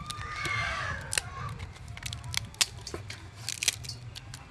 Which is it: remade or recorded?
recorded